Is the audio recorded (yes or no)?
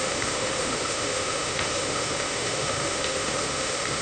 no